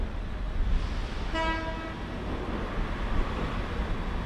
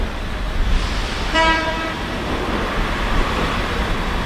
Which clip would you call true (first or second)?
first